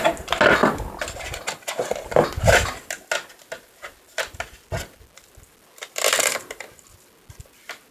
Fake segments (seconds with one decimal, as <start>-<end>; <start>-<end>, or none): none